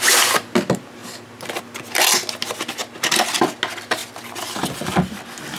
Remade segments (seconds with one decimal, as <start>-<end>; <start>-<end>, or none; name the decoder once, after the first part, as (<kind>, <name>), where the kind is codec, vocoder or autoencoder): none

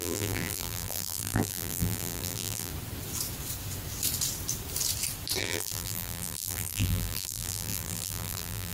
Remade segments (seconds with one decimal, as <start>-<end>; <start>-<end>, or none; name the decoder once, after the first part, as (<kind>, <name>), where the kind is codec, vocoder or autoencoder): 0.0-2.7 (vocoder, BigVGAN v2); 5.4-8.7

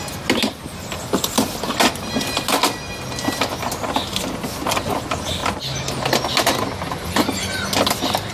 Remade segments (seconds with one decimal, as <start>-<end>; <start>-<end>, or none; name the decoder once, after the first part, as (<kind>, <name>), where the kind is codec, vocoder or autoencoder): none

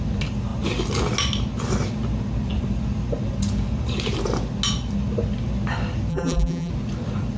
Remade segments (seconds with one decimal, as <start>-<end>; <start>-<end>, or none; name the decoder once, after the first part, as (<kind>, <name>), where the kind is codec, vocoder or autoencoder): 6.1-6.7 (vocoder, BigVGAN v2)

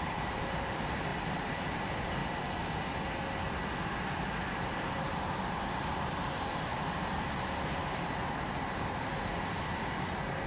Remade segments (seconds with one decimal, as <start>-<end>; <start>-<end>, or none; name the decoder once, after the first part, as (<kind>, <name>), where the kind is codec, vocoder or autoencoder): 0.0-2.2 (vocoder, BigVGAN v2); 4.5-10.5

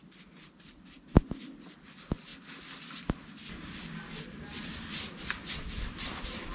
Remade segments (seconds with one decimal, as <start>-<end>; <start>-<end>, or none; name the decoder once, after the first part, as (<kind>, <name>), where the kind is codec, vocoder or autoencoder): none

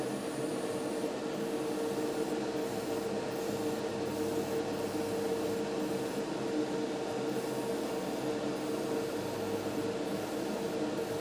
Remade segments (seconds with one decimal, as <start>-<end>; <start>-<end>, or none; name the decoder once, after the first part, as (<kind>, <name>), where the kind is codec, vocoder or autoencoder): none